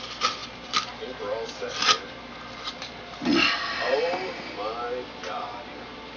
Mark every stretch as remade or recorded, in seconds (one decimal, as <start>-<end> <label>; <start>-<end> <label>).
0.0-0.4 recorded; 0.4-4.1 remade; 4.1-6.2 recorded